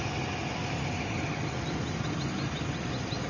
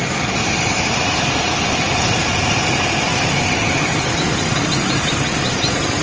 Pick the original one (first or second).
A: first